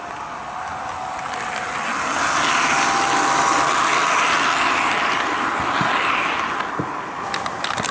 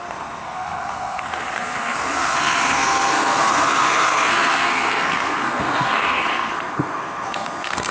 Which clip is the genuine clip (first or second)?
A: first